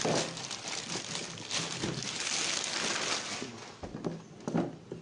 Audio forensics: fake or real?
real